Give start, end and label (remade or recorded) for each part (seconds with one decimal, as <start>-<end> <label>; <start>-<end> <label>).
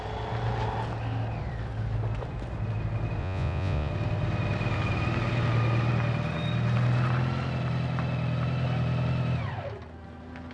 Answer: 0.0-3.2 recorded; 3.2-3.9 remade; 3.9-10.5 recorded